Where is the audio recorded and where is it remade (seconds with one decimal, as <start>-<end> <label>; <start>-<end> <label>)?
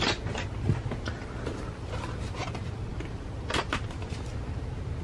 0.0-5.0 recorded